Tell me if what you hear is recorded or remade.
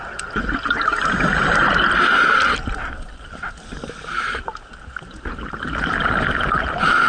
recorded